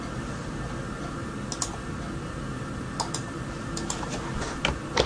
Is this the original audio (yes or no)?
yes